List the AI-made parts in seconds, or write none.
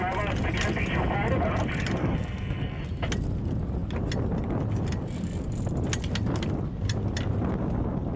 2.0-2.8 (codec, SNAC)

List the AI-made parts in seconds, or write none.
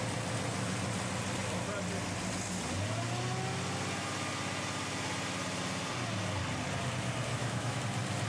7.3-7.8 (autoencoder, DAC-VAE)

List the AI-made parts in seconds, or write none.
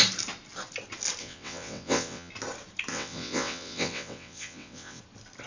1.2-2.3 (vocoder, WaveNeXt); 2.9-5.0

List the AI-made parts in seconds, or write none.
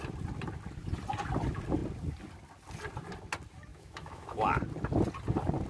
3.7-4.6 (autoencoder, DAC-VAE)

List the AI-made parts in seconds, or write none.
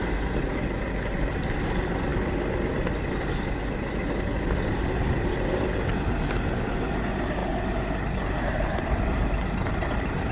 0.0-2.1 (vocoder, BigVGAN v2); 6.9-7.4; 8.1-10.3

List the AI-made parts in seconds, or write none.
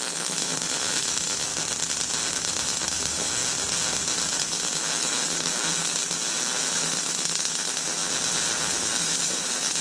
0.0-1.5 (autoencoder, DAC-VAE); 2.3-3.4; 4.4-6.0; 6.7-8.0; 8.6-9.8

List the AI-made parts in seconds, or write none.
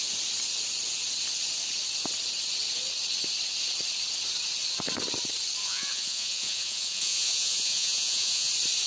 5.6-8.5 (vocoder, Vocos)